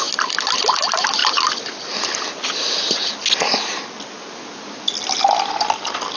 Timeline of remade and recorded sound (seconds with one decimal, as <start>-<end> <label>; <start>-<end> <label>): 0.0-6.2 recorded